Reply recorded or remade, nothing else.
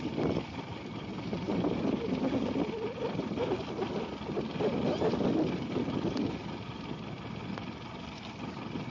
recorded